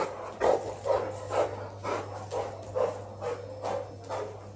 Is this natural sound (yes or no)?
yes